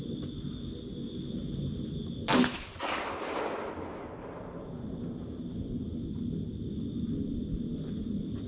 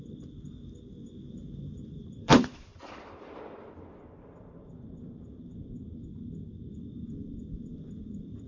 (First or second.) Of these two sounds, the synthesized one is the second